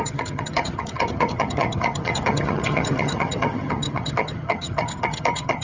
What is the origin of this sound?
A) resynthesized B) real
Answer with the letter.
A